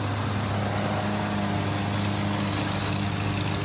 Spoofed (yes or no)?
no